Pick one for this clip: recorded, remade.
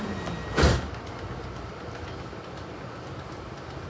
recorded